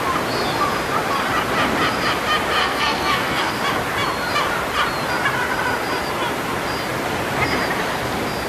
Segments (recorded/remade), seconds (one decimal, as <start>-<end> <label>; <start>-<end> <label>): 0.0-2.6 recorded; 2.6-3.5 remade; 3.5-8.5 recorded